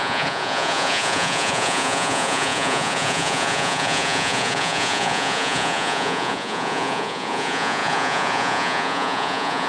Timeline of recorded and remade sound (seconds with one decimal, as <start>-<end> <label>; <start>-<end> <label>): 0.0-9.7 remade